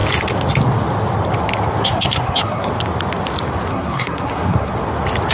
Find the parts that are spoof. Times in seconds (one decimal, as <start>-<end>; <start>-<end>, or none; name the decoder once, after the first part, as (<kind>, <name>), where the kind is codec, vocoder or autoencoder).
1.8-2.7 (codec, SNAC); 3.7-4.7